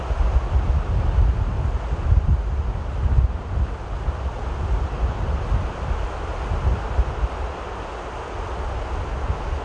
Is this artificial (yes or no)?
no